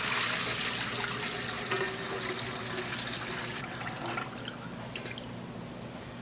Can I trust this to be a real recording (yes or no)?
yes